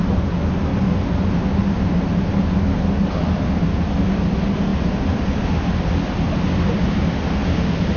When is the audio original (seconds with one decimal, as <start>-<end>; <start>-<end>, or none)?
0.0-8.0